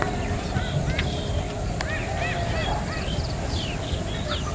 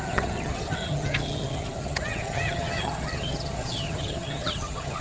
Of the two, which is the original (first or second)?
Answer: first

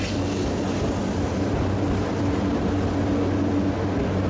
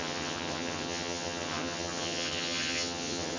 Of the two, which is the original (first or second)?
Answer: first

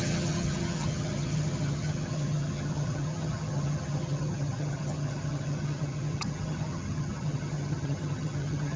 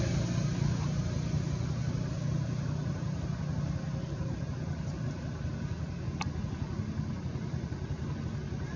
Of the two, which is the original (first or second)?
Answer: second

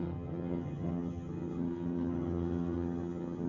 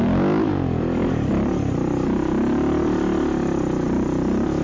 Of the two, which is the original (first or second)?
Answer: second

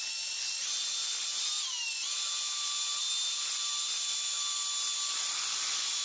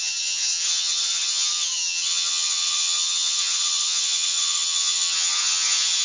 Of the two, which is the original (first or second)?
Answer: first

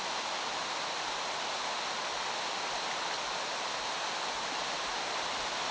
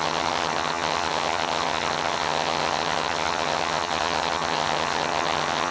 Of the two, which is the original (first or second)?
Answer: first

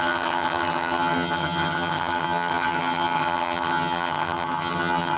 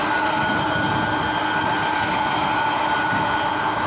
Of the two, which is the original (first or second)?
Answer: second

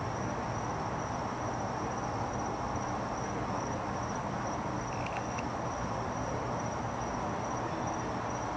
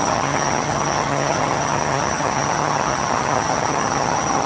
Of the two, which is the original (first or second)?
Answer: first